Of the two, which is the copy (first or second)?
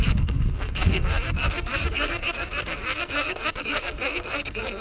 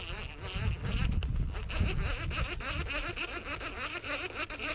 first